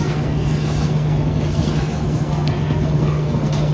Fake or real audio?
fake